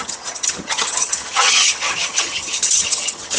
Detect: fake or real fake